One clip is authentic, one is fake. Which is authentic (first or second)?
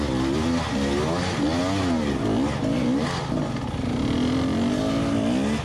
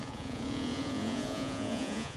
first